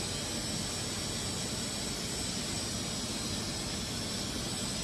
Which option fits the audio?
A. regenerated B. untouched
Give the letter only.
B